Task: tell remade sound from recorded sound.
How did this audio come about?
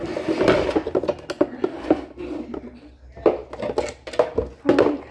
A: recorded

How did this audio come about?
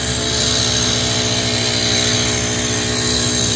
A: recorded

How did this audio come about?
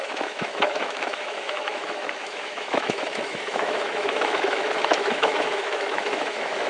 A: remade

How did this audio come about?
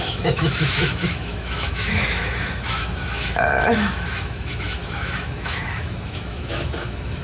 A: remade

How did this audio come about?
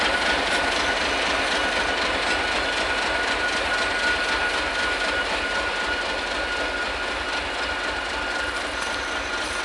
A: recorded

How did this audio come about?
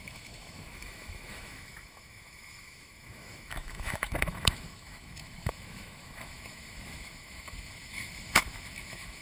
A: remade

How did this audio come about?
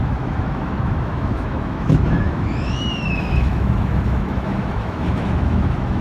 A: remade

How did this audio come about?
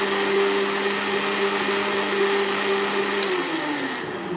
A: recorded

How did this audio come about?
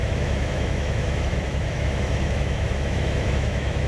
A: remade